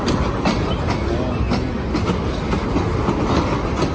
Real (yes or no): yes